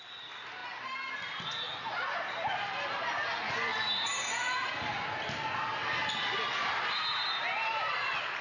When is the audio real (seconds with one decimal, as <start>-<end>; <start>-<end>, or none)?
0.0-3.7; 4.7-8.4